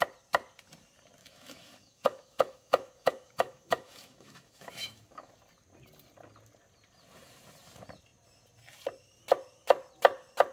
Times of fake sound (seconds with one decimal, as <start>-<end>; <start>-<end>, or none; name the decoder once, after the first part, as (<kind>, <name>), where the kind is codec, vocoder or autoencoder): 1.2-5.3 (autoencoder, DAC-VAE)